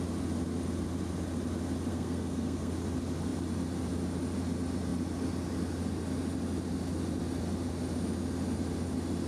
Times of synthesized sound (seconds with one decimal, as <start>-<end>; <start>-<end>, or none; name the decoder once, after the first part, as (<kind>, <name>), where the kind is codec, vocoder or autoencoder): 1.9-2.7 (codec, SNAC)